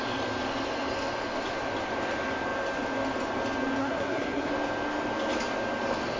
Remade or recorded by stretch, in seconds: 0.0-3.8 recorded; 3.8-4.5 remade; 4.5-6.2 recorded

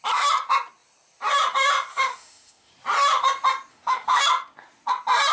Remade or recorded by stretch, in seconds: 0.0-1.9 recorded; 1.9-2.7 remade; 2.7-3.7 recorded; 3.7-4.2 remade; 4.2-5.3 recorded

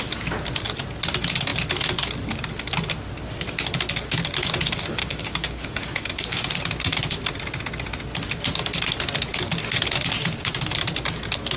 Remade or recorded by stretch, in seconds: 0.0-5.0 recorded; 5.0-6.5 remade; 6.5-11.6 recorded

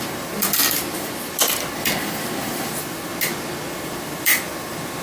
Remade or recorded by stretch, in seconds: 0.0-0.6 remade; 0.6-1.4 recorded; 1.4-3.1 remade; 3.1-3.7 recorded; 3.7-5.0 remade

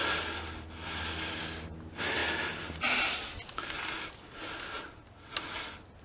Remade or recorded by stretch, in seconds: 0.0-6.0 recorded